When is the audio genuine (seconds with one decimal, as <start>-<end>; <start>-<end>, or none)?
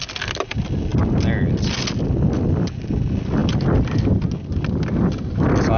0.0-5.8